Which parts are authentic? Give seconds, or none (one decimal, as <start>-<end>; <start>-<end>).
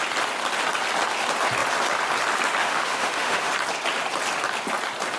0.0-2.6; 3.5-5.2